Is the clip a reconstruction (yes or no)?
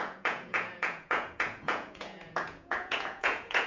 yes